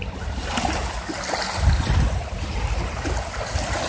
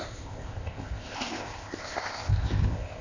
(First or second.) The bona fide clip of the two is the first